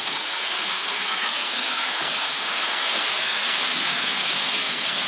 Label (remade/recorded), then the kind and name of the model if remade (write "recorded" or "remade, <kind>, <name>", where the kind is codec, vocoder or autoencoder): remade, codec, SNAC